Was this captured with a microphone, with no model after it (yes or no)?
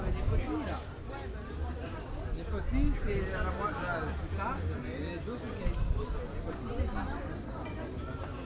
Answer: yes